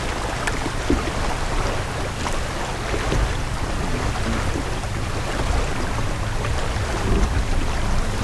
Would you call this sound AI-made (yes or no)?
no